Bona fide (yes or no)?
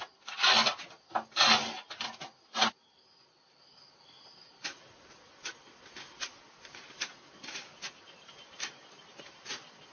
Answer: yes